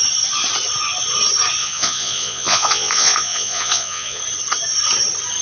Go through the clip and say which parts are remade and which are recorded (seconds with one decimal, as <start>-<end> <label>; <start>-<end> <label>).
0.0-1.6 recorded; 1.6-4.2 remade; 4.2-5.4 recorded